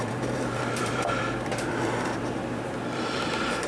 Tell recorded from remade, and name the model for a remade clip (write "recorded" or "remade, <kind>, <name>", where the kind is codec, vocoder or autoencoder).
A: remade, vocoder, BigVGAN v2